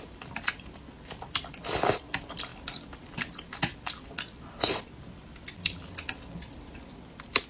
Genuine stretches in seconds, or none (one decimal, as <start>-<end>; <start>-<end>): 0.0-7.5